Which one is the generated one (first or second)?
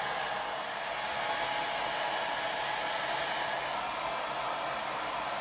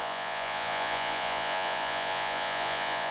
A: second